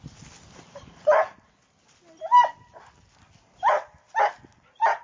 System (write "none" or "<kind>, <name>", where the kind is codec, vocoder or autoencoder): none